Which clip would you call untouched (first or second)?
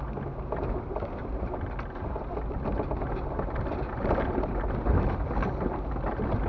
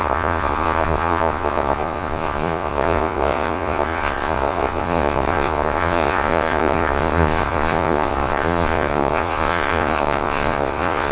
first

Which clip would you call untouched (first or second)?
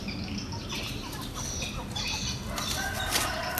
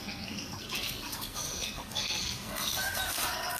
first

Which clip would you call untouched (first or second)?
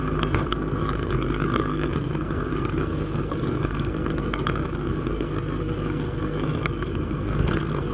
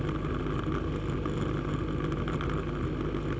second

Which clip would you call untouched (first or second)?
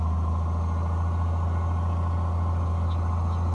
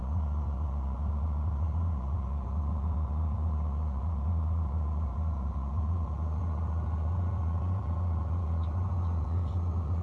first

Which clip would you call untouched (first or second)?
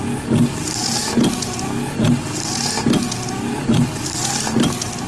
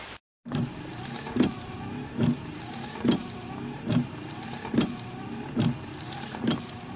first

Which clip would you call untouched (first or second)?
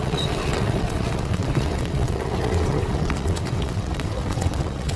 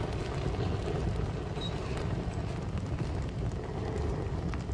second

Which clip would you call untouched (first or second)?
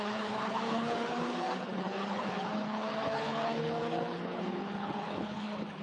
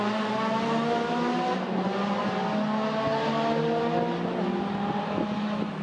second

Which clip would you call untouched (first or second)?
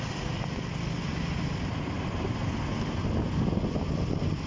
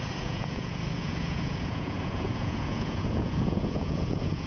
first